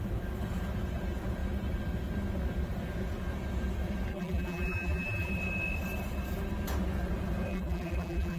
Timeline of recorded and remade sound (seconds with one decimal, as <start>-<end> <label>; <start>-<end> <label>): 0.0-4.1 recorded; 4.1-5.3 remade; 5.3-7.5 recorded; 7.5-8.4 remade

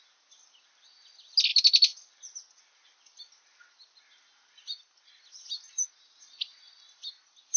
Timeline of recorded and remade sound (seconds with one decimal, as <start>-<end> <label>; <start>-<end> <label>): 0.0-7.6 recorded

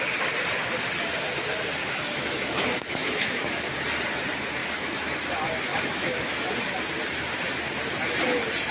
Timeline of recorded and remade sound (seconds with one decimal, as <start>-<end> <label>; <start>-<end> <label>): 0.0-1.8 recorded; 1.8-3.6 remade; 3.6-4.6 recorded; 4.6-5.3 remade; 5.3-5.7 recorded; 5.7-6.5 remade; 6.5-8.7 recorded

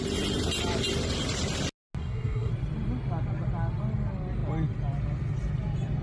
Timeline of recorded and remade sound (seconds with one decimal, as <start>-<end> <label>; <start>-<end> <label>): 0.0-2.0 recorded; 2.0-2.5 remade; 2.5-6.0 recorded

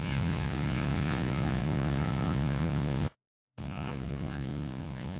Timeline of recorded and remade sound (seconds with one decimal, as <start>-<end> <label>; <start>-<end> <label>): 0.0-5.2 remade

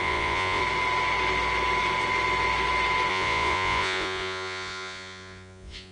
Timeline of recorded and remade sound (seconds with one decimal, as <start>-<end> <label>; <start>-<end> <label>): 0.0-0.6 remade; 0.6-3.1 recorded; 3.1-5.9 remade

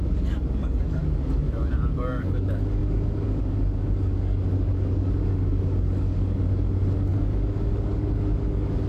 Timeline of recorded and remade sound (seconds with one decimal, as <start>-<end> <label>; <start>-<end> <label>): 0.0-8.9 remade

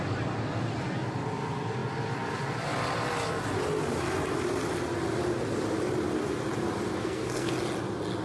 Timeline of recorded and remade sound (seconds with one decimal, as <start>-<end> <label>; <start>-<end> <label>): 0.0-7.0 recorded; 7.0-7.5 remade; 7.5-8.2 recorded